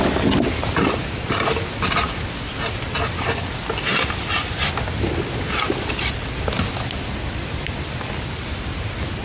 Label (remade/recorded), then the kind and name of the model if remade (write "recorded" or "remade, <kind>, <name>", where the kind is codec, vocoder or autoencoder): recorded